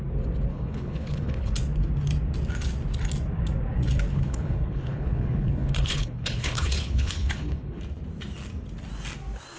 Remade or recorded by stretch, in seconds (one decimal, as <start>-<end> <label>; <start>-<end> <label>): 0.0-0.5 recorded; 0.5-1.5 remade; 1.5-4.1 recorded; 4.1-7.8 remade; 7.8-9.6 recorded